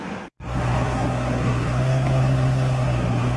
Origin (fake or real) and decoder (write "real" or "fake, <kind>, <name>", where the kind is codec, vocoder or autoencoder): fake, codec, SNAC